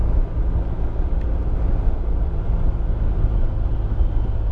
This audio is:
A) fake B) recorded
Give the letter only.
B